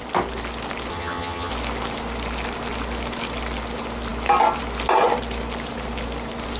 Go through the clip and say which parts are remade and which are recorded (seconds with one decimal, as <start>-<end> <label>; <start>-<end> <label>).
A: 0.0-0.9 recorded; 0.9-1.5 remade; 1.5-6.6 recorded